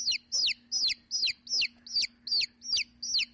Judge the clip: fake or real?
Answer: real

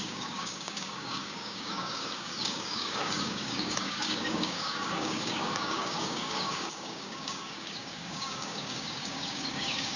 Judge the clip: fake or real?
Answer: fake